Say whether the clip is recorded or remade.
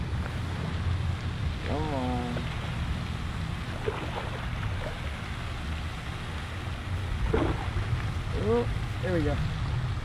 recorded